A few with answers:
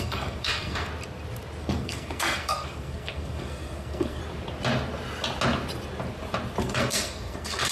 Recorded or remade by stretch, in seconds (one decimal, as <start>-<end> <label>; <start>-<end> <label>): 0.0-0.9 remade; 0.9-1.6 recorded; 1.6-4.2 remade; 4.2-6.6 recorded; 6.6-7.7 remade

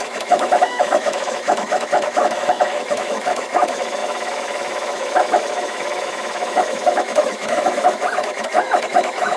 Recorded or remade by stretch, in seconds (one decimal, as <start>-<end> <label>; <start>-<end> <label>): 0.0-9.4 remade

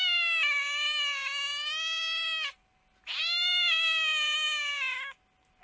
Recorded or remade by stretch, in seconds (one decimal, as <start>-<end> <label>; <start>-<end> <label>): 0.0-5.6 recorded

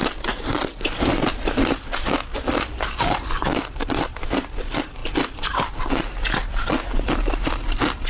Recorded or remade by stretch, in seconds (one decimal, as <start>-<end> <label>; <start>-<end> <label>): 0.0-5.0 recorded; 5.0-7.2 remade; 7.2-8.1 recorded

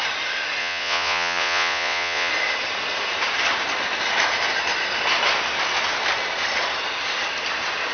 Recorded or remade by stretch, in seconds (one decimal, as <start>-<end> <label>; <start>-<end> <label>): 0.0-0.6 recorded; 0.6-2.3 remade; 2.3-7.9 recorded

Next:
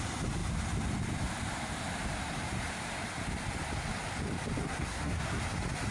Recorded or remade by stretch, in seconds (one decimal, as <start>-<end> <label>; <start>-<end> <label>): 0.0-4.6 recorded; 4.6-5.4 remade; 5.4-5.9 recorded